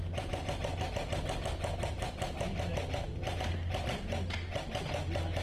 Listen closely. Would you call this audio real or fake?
real